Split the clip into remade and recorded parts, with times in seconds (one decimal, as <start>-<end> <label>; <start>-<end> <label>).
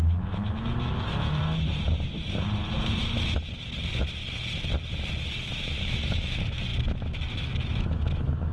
0.0-1.4 remade; 1.4-5.3 recorded; 5.3-8.5 remade